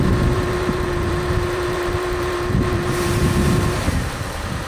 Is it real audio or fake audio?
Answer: fake